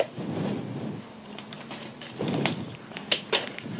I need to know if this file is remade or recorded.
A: remade